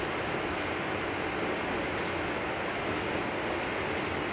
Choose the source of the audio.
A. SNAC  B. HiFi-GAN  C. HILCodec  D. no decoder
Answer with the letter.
D